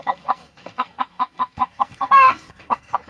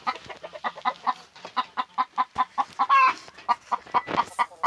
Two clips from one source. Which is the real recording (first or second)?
second